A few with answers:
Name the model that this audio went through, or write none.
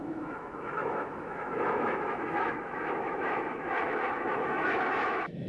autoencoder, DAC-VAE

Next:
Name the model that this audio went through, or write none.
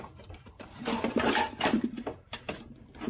vocoder, BigVGAN v2